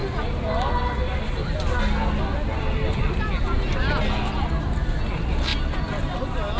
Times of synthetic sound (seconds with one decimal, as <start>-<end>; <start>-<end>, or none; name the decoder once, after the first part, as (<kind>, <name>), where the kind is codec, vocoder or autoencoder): none

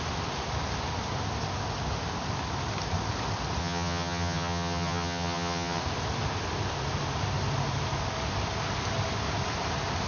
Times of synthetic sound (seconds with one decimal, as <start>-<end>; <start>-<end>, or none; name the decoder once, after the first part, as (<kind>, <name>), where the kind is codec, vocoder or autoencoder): 3.6-5.8 (vocoder, HiFi-GAN)

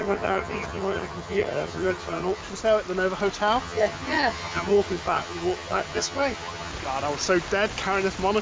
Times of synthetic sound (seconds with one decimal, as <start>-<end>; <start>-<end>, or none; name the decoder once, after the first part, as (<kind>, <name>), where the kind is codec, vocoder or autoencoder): 0.0-2.4 (vocoder, HiFi-GAN); 3.6-6.7

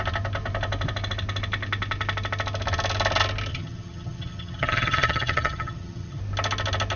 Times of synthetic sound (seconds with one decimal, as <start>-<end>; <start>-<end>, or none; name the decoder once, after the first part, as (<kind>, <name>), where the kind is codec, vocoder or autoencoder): 3.5-6.2 (vocoder, HiFi-GAN)

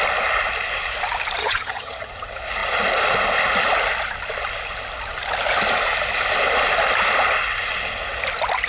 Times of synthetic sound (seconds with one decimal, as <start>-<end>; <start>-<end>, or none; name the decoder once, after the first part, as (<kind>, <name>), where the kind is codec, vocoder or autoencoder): 1.4-2.1 (vocoder, HiFi-GAN)

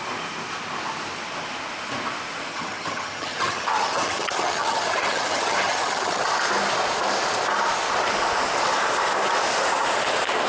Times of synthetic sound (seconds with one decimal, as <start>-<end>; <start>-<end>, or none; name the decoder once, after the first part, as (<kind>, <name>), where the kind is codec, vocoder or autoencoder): 2.5-6.2 (vocoder, HiFi-GAN)

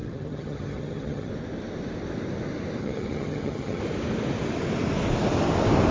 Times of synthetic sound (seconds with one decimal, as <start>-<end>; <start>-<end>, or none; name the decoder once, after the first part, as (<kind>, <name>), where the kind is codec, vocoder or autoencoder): 0.0-1.3 (vocoder, HiFi-GAN); 2.8-3.8